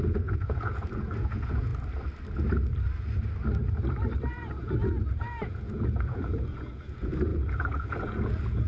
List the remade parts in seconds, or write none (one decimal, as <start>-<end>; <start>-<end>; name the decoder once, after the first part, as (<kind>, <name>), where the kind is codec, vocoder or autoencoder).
0.0-1.7 (vocoder, Vocos); 4.3-8.7